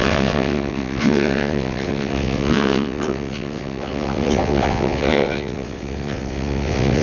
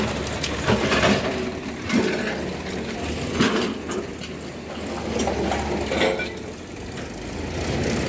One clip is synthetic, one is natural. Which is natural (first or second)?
second